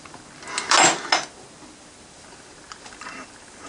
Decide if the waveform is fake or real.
real